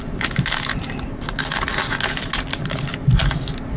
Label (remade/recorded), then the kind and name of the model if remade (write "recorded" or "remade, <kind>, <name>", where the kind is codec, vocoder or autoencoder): recorded